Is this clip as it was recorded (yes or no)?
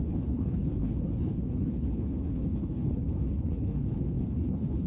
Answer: no